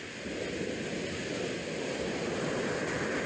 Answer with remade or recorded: recorded